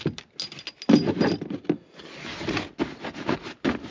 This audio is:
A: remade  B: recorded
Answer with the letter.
B